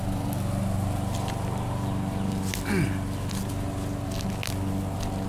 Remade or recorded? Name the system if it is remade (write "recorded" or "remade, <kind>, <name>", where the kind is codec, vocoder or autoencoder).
recorded